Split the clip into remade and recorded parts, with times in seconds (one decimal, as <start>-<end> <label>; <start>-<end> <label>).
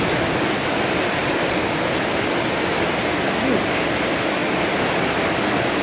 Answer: 0.0-5.8 recorded